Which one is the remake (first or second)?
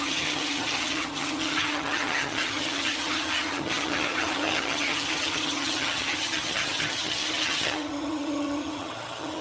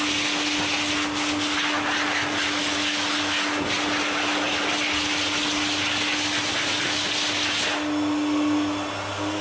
first